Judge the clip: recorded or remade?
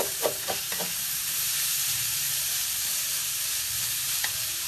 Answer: remade